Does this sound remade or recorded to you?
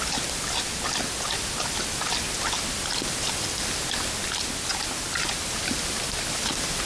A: recorded